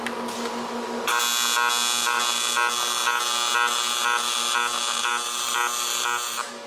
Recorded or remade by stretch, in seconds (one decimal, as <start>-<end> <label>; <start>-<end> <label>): 0.0-6.7 recorded